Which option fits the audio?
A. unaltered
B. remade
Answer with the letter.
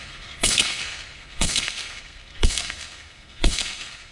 B